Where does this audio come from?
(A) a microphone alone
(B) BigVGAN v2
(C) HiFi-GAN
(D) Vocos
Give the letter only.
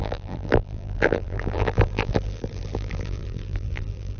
B